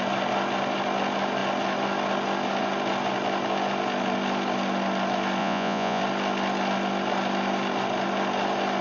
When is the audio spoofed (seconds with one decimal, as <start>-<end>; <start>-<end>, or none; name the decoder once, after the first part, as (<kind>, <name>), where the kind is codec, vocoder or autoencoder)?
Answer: 5.4-6.0 (vocoder, Vocos)